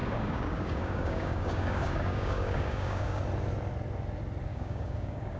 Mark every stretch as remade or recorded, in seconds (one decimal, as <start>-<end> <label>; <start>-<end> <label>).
0.0-3.2 remade; 3.2-4.5 recorded; 4.5-5.4 remade